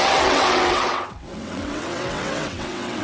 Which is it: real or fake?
fake